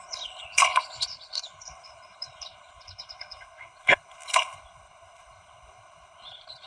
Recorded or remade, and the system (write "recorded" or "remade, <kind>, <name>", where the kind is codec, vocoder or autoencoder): remade, codec, HILCodec